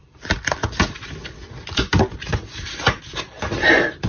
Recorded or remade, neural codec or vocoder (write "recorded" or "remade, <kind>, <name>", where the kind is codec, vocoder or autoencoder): recorded